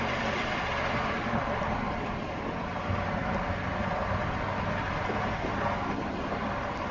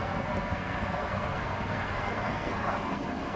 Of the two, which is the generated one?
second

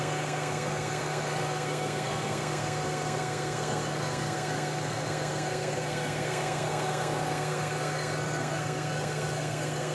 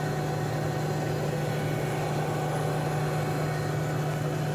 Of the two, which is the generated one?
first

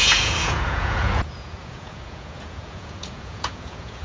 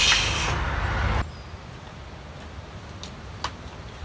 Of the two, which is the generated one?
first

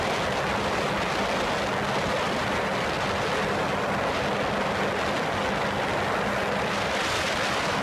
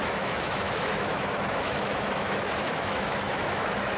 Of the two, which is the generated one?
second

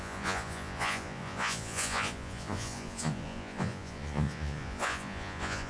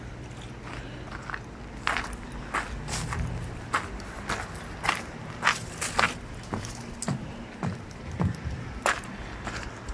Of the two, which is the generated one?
first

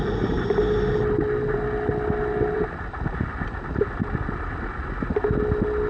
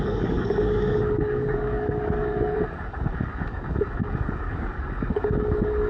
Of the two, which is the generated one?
second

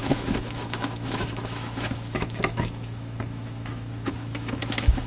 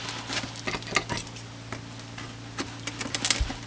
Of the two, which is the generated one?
first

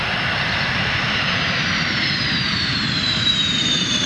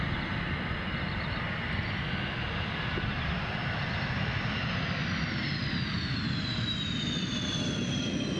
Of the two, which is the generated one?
first